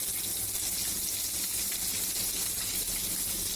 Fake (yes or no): no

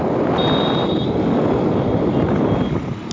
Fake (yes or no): no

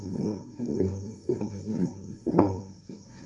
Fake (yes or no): yes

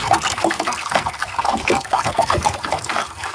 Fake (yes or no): yes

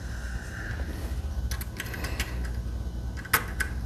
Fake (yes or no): no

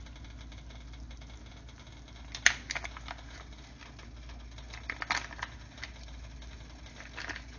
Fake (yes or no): no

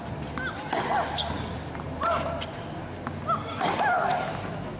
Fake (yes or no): no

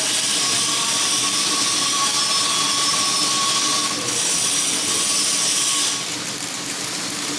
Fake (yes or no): no